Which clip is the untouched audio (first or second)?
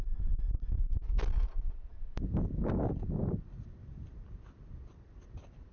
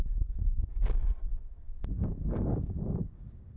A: first